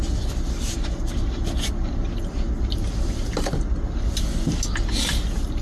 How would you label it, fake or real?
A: real